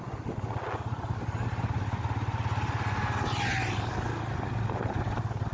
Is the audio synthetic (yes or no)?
no